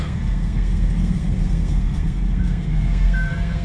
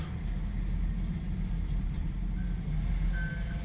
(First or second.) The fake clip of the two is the first